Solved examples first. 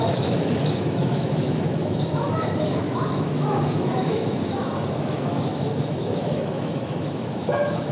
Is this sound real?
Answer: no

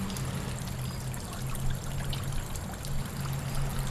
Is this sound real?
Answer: yes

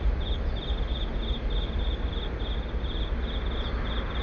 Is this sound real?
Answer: yes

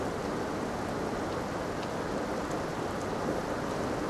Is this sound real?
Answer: yes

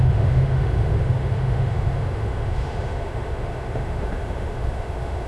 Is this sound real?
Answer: no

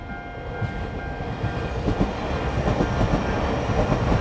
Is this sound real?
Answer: yes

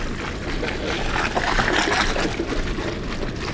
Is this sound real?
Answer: yes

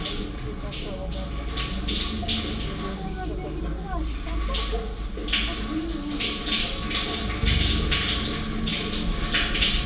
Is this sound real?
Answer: yes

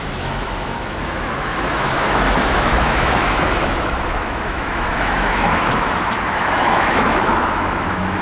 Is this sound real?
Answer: no